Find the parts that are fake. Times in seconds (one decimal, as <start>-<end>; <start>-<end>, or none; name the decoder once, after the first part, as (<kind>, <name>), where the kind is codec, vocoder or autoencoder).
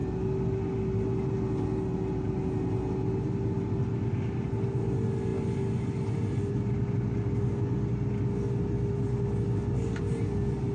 none